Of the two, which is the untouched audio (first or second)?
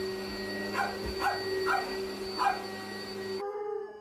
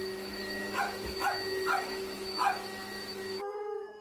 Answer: first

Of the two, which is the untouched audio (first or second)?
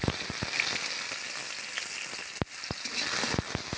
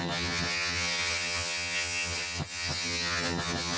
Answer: first